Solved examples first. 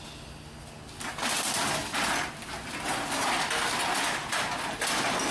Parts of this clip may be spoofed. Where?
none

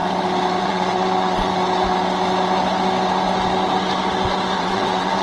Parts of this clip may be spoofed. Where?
0.6-1.5 (vocoder, WaveNeXt); 4.6-5.2

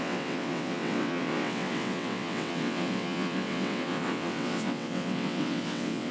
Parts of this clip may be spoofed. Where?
0.0-6.1 (vocoder, WaveNeXt)